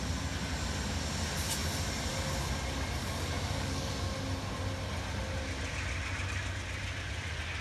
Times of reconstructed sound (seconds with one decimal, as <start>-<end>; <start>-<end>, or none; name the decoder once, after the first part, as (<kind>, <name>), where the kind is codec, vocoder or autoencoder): 3.0-3.9 (codec, DAC)